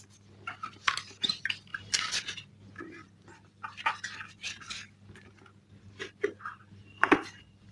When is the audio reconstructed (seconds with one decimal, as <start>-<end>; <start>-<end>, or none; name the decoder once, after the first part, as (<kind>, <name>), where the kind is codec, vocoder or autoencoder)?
none